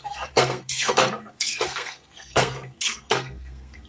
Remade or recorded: remade